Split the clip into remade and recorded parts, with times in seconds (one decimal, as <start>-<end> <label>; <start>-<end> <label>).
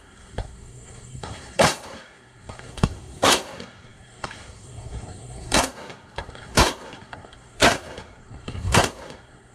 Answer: 0.0-9.5 remade